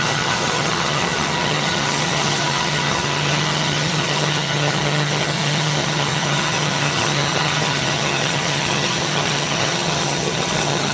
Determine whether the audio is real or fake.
fake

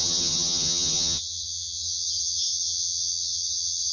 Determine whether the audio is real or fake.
fake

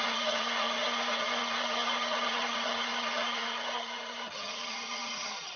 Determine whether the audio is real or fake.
fake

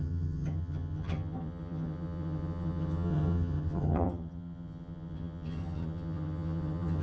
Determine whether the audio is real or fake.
fake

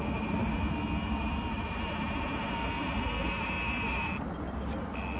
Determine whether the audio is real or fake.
real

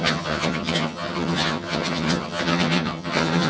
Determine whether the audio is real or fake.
fake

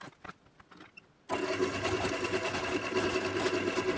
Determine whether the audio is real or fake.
real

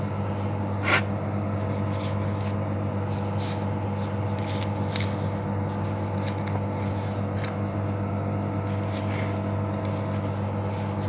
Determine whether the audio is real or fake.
real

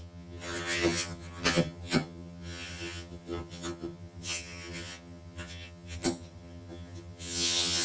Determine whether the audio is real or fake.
fake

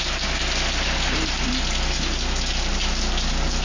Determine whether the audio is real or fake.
real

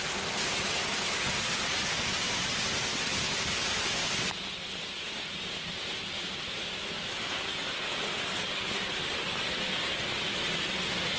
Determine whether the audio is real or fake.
real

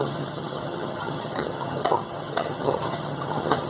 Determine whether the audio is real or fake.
fake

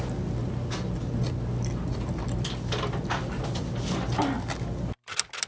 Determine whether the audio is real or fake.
real